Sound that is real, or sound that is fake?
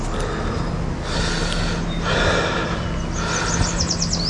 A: real